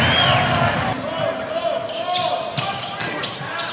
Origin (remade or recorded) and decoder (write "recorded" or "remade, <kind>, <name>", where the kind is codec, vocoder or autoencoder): recorded